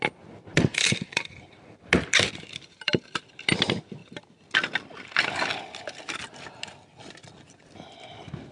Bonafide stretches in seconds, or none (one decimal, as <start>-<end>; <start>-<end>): 0.0-0.7; 1.9-8.5